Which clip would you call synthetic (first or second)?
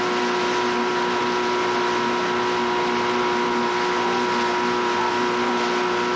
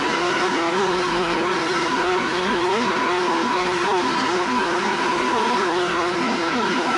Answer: second